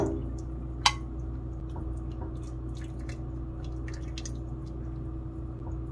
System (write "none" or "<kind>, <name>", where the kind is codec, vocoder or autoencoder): none